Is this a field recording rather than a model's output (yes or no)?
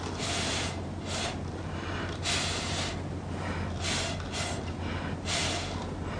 yes